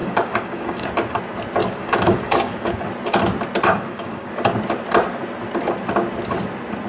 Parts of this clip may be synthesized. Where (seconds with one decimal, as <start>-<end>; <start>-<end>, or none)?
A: 0.0-0.9; 1.6-2.7; 3.7-4.3

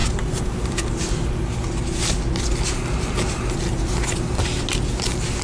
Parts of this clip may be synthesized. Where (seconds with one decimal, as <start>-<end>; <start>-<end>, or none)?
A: none